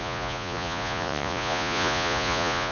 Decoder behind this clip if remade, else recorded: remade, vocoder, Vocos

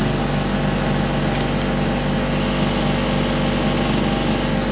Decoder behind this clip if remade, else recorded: recorded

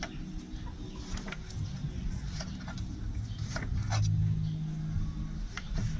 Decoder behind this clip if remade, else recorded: recorded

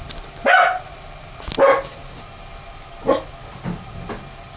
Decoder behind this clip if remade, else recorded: recorded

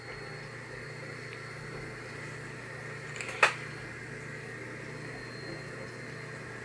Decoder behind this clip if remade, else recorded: recorded